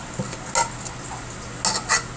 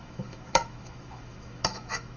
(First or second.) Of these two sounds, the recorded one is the first